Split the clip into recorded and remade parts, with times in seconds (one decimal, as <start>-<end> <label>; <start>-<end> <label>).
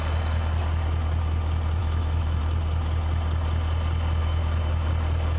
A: 0.0-1.8 recorded; 1.8-2.4 remade; 2.4-4.2 recorded; 4.2-4.9 remade; 4.9-5.4 recorded